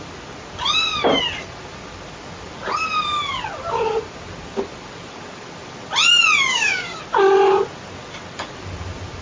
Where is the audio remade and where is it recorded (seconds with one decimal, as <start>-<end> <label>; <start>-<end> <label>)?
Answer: 0.0-6.5 recorded; 6.5-7.0 remade; 7.0-9.2 recorded